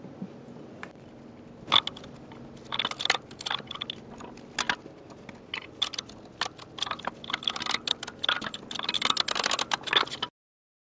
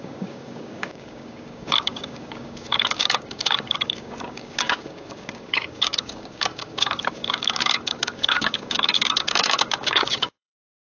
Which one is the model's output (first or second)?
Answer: second